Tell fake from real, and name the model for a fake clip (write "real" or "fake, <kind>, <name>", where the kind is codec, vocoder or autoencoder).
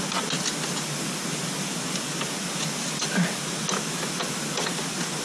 real